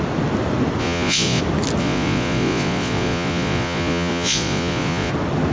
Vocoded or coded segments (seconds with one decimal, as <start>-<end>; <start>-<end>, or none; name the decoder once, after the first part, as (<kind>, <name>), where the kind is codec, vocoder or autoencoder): 0.8-1.4 (vocoder, Vocos); 1.8-5.1